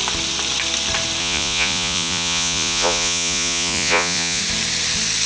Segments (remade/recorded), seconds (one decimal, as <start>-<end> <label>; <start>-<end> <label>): 0.0-1.2 recorded; 1.2-4.4 remade; 4.4-5.3 recorded